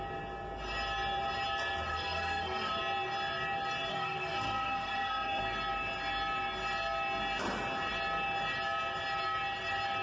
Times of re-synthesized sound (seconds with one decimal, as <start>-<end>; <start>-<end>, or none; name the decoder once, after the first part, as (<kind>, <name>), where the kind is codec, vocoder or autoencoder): 1.9-2.7 (codec, SNAC); 3.9-5.4